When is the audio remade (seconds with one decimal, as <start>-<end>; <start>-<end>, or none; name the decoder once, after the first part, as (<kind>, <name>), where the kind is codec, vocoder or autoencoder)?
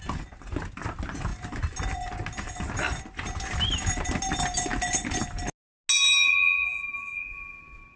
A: none